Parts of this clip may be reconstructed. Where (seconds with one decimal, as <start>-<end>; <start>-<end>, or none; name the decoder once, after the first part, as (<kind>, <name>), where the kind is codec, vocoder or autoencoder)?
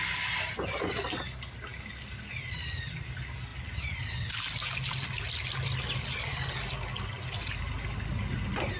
none